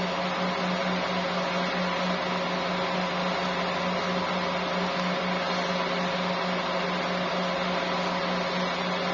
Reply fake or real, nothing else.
real